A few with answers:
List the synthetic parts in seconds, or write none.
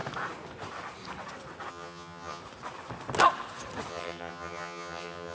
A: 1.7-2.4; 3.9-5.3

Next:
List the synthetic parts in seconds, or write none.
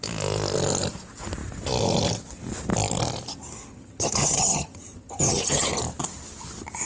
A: 3.7-5.8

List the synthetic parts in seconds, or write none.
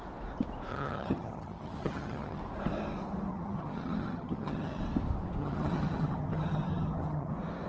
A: 0.7-2.4; 3.3-4.8; 5.4-7.3